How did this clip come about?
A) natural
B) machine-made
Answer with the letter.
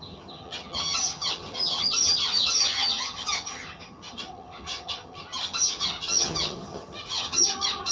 B